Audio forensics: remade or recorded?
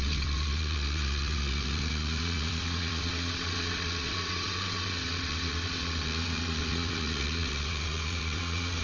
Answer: remade